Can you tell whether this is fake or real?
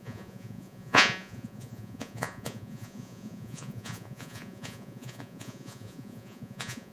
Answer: fake